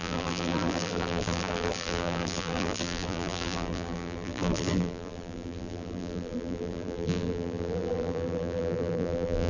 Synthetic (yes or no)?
yes